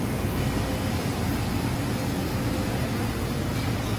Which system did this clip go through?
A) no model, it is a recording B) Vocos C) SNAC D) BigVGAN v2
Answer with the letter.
A